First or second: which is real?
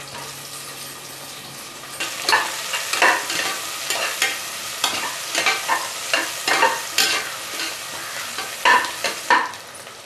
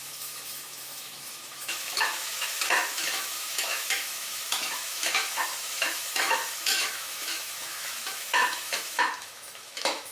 first